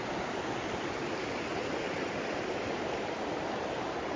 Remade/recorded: recorded